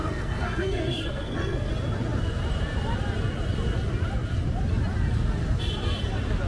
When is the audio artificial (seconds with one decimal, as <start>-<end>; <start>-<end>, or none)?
0.0-1.7